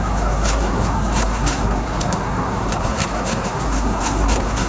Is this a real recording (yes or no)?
no